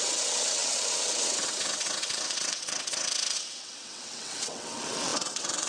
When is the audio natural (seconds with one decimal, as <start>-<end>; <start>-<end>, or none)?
none